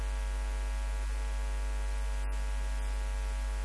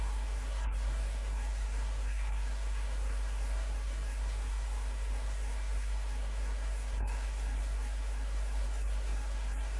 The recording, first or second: first